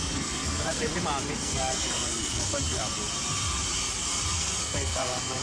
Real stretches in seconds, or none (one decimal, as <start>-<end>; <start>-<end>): 0.9-1.4; 2.8-4.3